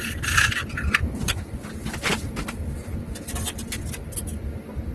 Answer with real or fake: real